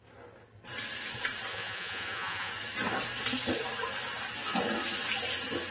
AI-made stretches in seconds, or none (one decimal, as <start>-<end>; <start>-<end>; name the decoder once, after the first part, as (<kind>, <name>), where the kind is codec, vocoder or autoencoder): 1.5-2.5 (vocoder, Vocos)